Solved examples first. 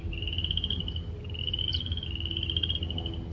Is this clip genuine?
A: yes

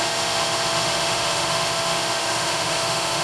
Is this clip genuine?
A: no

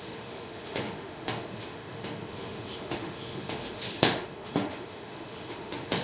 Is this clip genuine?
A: no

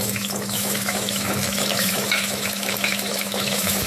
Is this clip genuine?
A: no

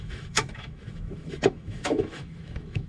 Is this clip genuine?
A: no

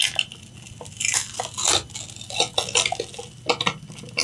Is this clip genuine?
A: yes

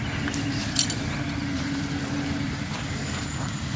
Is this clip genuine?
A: yes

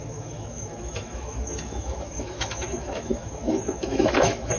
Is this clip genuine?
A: no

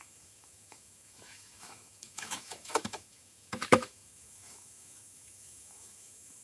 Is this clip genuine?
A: no